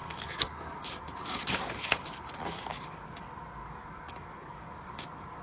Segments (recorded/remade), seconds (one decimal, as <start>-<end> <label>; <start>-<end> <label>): 0.0-3.2 remade; 3.2-3.6 recorded; 3.6-5.4 remade